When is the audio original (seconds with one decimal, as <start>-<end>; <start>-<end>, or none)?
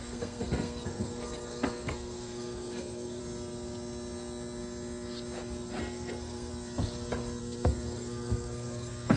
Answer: 3.2-5.8; 6.5-7.4